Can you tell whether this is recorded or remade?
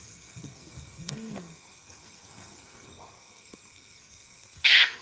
remade